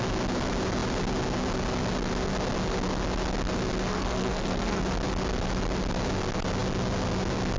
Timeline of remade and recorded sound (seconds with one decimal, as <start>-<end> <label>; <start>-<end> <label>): 0.0-3.9 recorded; 3.9-4.8 remade; 4.8-7.6 recorded

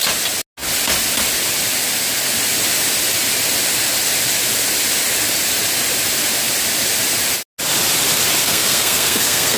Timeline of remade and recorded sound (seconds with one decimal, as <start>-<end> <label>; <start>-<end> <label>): 0.0-8.4 recorded; 8.4-9.6 remade

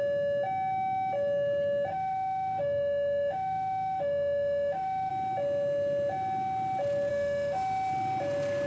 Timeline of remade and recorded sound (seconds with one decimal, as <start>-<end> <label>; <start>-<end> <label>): 0.0-1.9 recorded; 1.9-5.1 remade; 5.1-7.1 recorded; 7.1-7.9 remade; 7.9-8.7 recorded

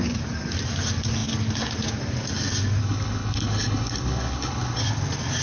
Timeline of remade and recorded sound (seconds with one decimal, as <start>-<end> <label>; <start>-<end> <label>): 0.0-2.8 recorded; 2.8-4.8 remade; 4.8-5.4 recorded